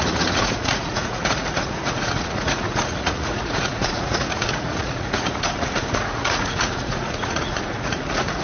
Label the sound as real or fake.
fake